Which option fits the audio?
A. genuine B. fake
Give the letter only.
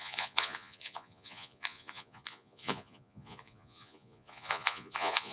B